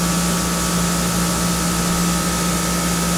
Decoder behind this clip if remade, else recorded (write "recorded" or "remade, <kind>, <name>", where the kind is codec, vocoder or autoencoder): recorded